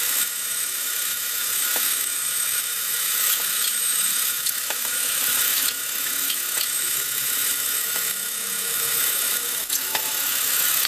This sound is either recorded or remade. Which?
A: remade